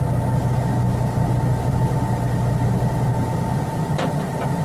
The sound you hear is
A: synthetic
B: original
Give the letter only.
B